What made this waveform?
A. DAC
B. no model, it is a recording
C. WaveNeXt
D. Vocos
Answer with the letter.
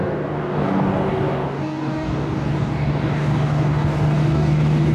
A